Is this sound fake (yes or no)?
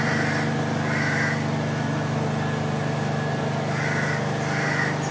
no